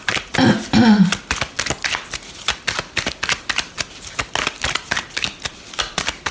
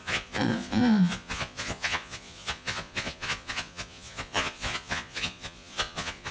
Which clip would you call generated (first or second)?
second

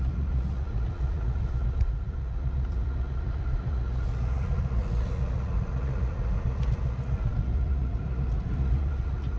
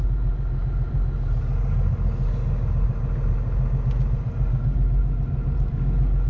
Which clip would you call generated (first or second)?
first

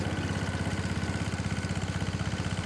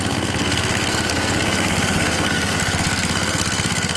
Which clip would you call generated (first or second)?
second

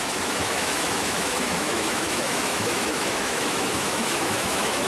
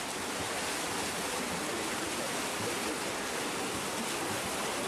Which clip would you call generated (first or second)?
first